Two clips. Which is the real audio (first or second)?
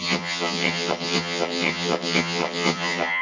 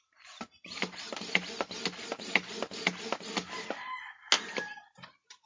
second